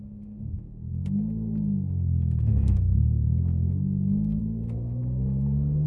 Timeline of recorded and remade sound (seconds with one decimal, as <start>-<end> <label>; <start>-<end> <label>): 0.0-5.9 remade